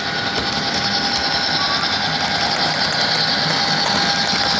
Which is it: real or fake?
real